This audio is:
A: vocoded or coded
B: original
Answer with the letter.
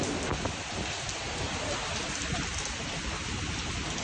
B